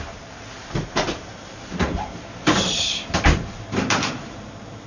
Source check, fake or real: fake